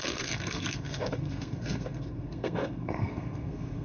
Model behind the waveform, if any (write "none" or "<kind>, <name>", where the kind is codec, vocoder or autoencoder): codec, SNAC